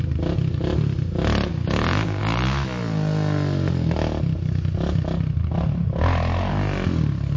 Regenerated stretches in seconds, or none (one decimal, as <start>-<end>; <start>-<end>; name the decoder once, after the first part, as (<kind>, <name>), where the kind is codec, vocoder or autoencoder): 1.5-2.2 (codec, DAC)